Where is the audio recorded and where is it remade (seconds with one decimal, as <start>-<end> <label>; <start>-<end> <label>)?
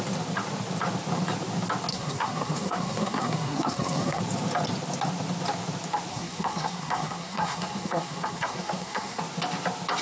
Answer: 0.0-1.9 recorded; 1.9-4.2 remade; 4.2-6.1 recorded; 6.1-9.2 remade; 9.2-10.0 recorded